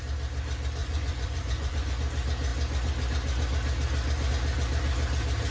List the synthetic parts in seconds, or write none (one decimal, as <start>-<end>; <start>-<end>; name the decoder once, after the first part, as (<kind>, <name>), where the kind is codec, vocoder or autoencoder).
0.8-1.9 (vocoder, Vocos)